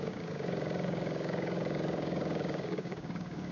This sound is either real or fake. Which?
fake